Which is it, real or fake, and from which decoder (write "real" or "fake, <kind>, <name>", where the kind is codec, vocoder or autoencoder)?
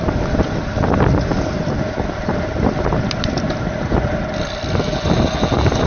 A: real